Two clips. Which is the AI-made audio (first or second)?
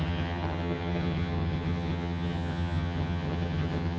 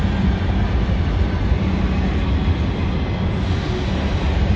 first